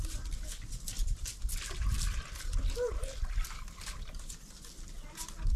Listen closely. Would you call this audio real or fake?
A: real